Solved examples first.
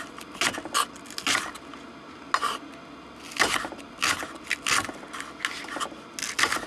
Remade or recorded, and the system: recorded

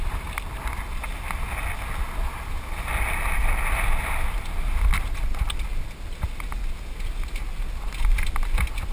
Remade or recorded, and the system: recorded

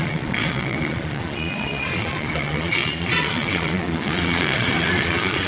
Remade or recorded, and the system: remade, vocoder, Vocos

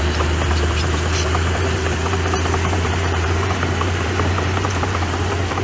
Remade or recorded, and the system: remade, vocoder, BigVGAN v2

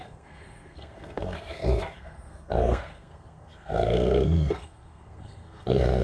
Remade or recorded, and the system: remade, codec, SNAC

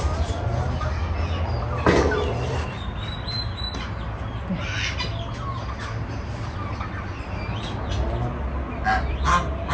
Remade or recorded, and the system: recorded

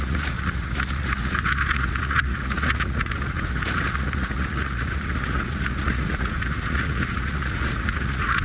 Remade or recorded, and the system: remade, vocoder, Vocos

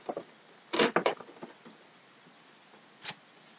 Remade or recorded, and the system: recorded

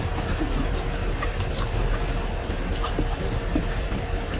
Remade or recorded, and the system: recorded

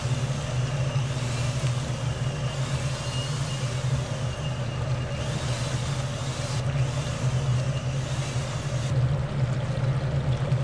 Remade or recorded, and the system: recorded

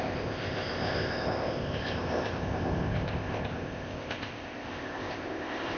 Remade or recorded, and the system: remade, codec, ZipCodec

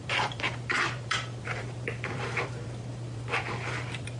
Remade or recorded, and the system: remade, vocoder, BigVGAN v2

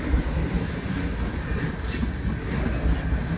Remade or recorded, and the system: recorded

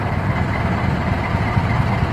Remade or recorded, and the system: recorded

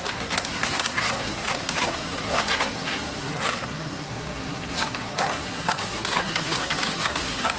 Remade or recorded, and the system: remade, codec, SNAC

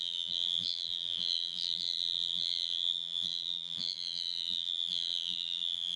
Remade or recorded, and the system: remade, vocoder, BigVGAN v2